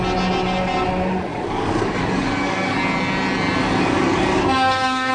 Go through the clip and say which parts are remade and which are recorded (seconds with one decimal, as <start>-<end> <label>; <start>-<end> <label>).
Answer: 0.0-1.3 recorded; 1.3-2.8 remade; 2.8-3.6 recorded; 3.6-5.1 remade

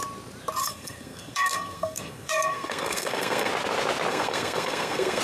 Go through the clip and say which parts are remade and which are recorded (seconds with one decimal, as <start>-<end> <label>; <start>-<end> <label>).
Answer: 0.0-0.6 recorded; 0.6-3.5 remade; 3.5-4.1 recorded; 4.1-5.2 remade

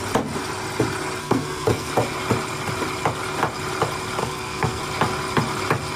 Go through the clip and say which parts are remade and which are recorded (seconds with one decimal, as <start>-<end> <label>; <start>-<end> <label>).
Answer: 0.0-1.2 recorded; 1.2-1.9 remade; 1.9-4.2 recorded; 4.2-4.8 remade; 4.8-6.0 recorded

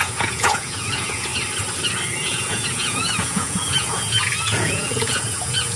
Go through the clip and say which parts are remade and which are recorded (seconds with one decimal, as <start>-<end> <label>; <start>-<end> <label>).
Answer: 0.0-1.3 remade; 1.3-2.2 recorded; 2.2-5.8 remade